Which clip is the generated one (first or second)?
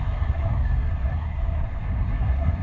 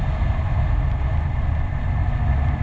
first